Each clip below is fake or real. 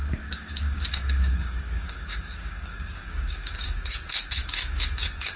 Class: fake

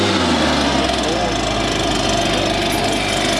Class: real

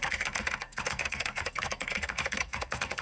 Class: fake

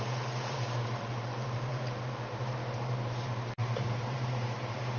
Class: fake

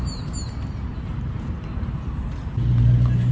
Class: real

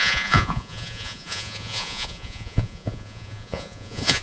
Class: fake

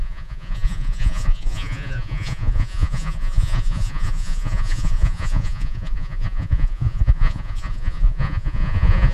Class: fake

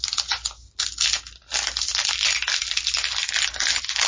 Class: real